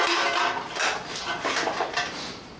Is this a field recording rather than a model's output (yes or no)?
yes